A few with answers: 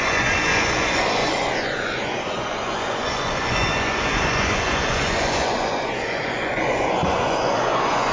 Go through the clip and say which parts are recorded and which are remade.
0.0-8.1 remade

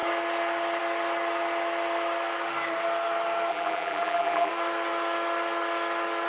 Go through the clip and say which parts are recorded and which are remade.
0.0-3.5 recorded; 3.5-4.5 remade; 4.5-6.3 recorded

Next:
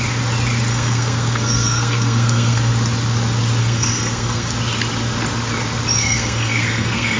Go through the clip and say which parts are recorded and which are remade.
0.0-0.7 recorded; 0.7-2.7 remade; 2.7-3.6 recorded; 3.6-4.5 remade; 4.5-6.0 recorded; 6.0-7.2 remade

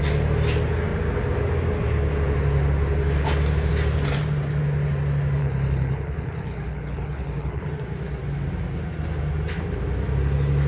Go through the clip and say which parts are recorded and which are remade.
0.0-5.4 recorded; 5.4-7.7 remade; 7.7-10.7 recorded